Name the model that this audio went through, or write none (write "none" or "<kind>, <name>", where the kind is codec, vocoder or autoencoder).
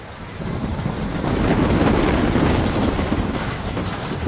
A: none